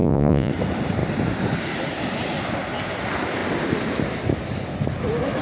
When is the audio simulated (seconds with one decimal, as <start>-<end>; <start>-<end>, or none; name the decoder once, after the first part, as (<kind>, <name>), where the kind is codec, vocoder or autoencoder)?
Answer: 0.0-0.5 (vocoder, Vocos)